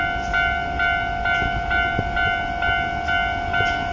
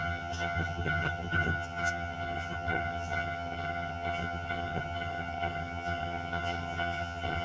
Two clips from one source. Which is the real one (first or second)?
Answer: first